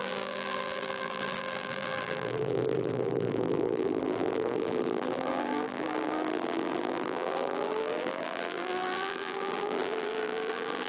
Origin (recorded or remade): remade